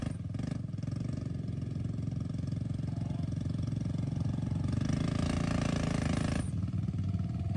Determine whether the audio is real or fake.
real